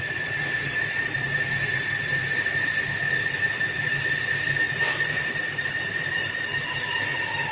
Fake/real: fake